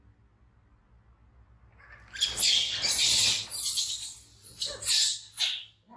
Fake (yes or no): no